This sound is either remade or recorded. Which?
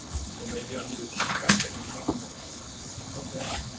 remade